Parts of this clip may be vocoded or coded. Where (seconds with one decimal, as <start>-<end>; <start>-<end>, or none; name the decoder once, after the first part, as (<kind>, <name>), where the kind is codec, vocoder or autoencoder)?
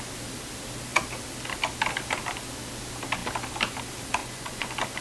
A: 4.2-5.0 (vocoder, Vocos)